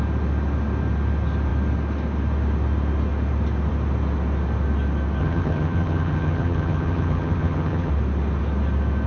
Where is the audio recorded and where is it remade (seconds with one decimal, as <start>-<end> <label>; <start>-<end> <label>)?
0.0-5.2 recorded; 5.2-7.9 remade; 7.9-9.1 recorded